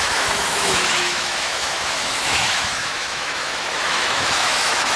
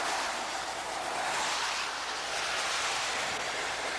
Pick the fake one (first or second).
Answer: first